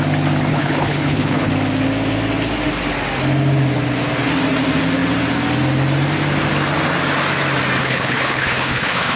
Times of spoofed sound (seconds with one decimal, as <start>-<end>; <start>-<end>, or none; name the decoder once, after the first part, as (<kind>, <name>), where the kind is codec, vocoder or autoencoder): 0.5-1.5 (codec, HILCodec); 7.8-9.2